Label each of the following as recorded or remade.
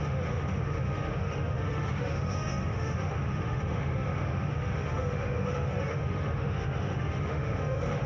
remade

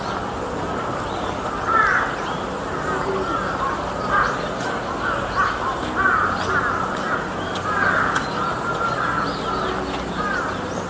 recorded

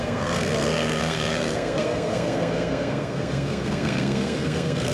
remade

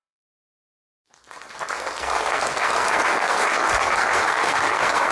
remade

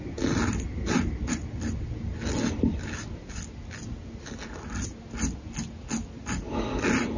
recorded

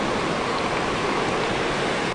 recorded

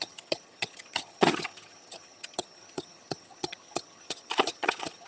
remade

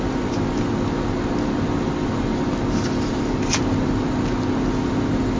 recorded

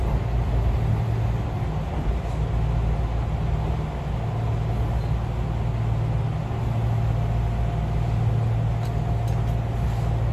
recorded